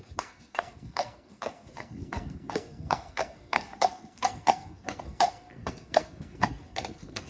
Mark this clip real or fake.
fake